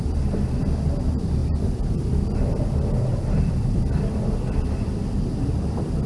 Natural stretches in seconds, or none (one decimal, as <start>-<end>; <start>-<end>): 0.0-6.1